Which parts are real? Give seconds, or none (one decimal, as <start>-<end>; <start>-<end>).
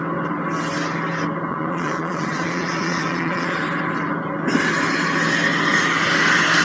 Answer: 0.0-1.5; 3.6-6.6